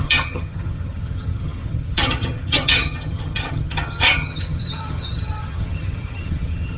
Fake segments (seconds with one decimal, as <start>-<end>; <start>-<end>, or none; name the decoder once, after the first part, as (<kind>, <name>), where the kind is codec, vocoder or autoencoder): 0.0-6.8 (vocoder, HiFi-GAN)